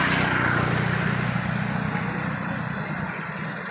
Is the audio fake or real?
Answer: real